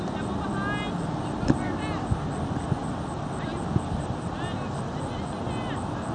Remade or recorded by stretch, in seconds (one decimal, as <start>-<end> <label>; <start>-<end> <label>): 0.0-6.1 recorded